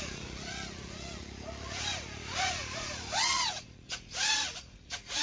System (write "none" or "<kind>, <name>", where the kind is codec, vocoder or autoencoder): vocoder, Vocos